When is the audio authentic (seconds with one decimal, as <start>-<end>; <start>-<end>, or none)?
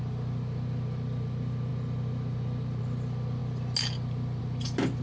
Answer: 0.0-5.0